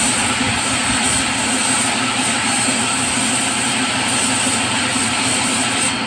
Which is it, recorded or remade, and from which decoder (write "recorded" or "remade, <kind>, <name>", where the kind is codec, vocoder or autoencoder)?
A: recorded